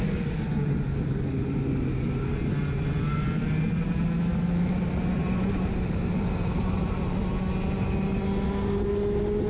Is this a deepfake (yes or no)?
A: no